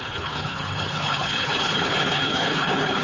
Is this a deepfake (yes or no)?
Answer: yes